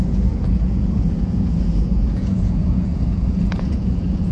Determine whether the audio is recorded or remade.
remade